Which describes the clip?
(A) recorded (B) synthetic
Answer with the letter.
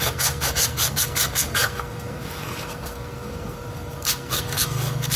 B